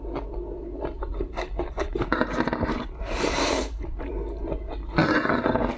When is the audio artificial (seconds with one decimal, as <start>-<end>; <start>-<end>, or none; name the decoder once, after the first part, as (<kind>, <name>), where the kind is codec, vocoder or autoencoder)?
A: 0.6-4.1 (vocoder, BigVGAN v2)